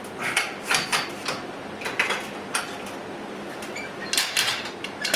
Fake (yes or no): no